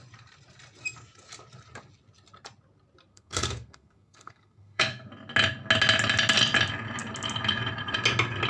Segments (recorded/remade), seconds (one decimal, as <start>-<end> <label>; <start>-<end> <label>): 0.0-3.1 recorded; 3.1-5.1 remade; 5.1-8.5 recorded